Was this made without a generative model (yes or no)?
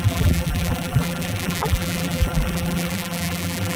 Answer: no